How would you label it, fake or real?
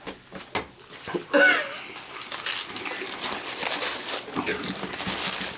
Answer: real